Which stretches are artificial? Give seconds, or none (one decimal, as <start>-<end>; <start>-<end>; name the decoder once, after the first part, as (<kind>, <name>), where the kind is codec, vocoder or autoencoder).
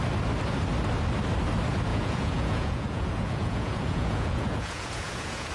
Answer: 1.9-5.5 (vocoder, Vocos)